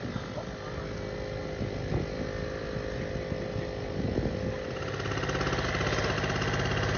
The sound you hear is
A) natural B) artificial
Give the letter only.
A